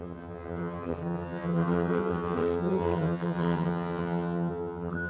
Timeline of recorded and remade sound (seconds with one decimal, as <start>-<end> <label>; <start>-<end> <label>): 0.0-5.1 remade